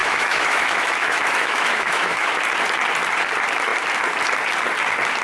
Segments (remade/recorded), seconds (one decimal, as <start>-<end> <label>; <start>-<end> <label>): 0.0-2.3 remade; 2.3-5.2 recorded